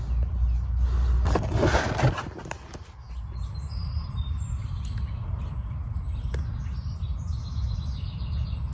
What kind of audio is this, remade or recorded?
recorded